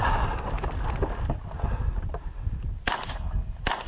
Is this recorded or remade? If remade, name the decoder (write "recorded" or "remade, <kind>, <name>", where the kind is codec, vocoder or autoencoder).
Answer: recorded